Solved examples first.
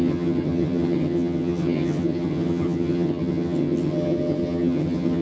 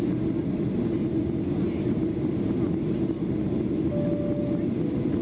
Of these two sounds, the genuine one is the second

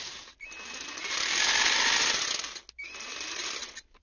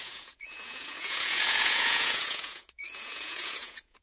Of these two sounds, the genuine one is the first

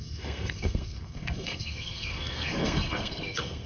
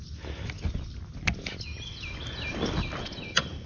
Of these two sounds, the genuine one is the second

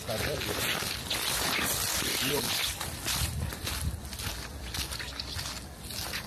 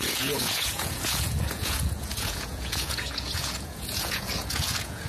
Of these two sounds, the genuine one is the first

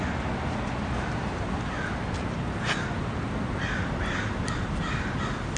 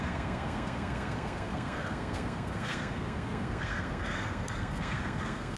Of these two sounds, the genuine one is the first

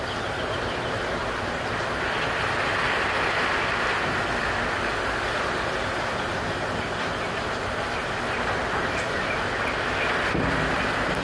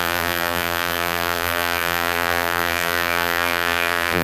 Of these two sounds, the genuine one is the first